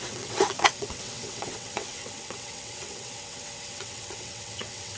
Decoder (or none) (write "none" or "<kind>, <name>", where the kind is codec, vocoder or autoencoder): vocoder, WaveNeXt